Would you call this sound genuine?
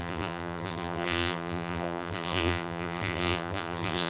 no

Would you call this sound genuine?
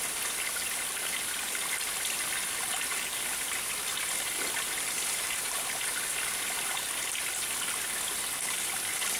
yes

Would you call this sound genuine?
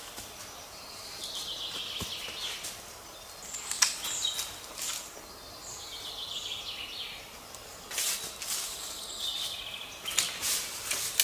yes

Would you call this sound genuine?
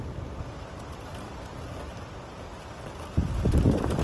yes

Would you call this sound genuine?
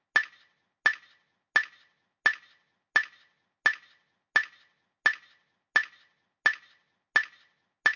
yes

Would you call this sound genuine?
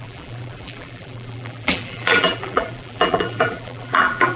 no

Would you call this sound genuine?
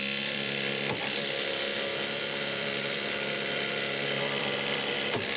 no